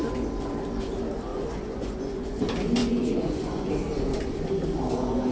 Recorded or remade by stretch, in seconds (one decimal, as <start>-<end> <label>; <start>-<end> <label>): 0.0-1.3 recorded; 1.3-2.4 remade; 2.4-2.8 recorded; 2.8-3.7 remade; 3.7-5.3 recorded